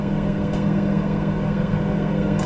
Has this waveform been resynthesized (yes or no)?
yes